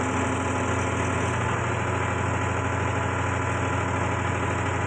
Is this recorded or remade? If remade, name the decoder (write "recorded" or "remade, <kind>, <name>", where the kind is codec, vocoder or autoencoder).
recorded